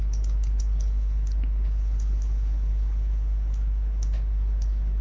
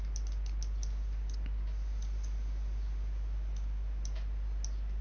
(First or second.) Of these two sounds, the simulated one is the first